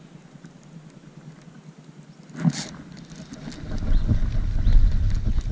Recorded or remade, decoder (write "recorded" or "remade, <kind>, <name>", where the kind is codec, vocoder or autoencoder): recorded